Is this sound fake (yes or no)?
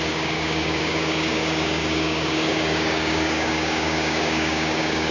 yes